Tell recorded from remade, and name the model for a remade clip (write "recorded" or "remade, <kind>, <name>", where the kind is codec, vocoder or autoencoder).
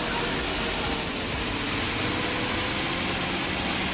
recorded